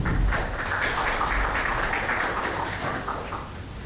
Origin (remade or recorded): recorded